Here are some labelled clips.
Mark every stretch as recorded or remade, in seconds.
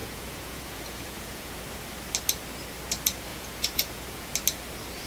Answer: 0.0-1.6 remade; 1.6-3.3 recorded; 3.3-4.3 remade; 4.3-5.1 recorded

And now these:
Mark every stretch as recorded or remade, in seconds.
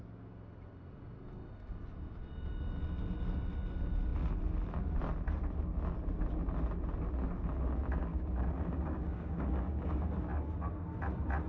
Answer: 0.0-8.1 recorded; 8.1-10.1 remade; 10.1-11.5 recorded